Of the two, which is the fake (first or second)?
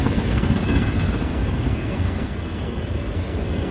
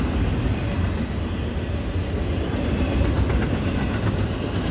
first